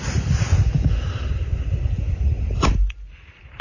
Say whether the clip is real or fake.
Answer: fake